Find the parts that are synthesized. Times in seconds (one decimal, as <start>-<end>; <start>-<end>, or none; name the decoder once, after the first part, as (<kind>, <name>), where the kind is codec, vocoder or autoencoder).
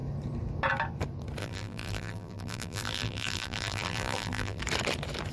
1.4-4.6 (vocoder, BigVGAN v2)